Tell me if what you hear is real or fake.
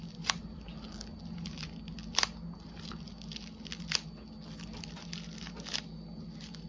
real